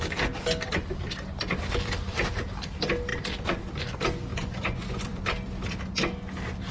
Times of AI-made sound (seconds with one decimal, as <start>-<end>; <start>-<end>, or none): 4.3-5.2